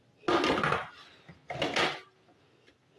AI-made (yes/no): no